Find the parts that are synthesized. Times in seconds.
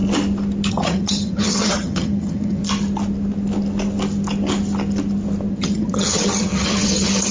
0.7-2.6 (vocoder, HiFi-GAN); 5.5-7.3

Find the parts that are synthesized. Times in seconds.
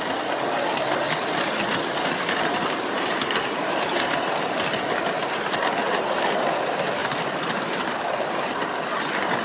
7.0-8.6 (vocoder, BigVGAN v2)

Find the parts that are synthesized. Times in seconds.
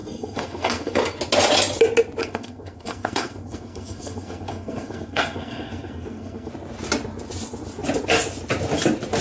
0.0-1.0 (codec, SNAC); 2.2-6.5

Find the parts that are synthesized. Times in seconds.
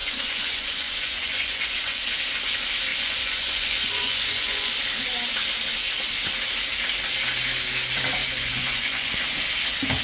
0.0-2.0 (vocoder, Vocos); 2.9-4.7; 8.2-9.1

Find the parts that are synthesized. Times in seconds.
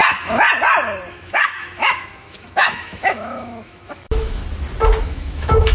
1.1-4.4 (autoencoder, DAC-VAE); 5.0-5.7